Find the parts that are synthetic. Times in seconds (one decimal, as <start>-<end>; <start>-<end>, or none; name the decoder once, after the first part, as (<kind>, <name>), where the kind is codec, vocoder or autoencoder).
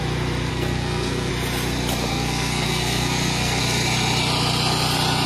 0.5-1.3 (codec, SNAC); 2.1-3.6